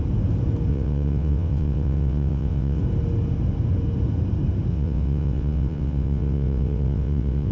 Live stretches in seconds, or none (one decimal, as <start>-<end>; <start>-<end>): 0.0-0.7; 2.8-4.7